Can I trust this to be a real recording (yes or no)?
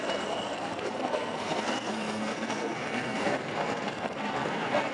no